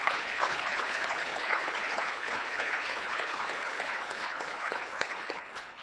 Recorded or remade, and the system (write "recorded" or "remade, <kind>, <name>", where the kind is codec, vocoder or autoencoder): remade, codec, HILCodec